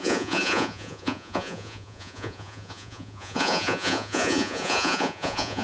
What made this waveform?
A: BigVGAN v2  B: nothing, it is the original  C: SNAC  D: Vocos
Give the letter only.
D